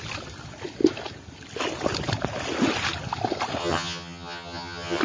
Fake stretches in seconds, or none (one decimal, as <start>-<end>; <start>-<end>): 3.6-5.0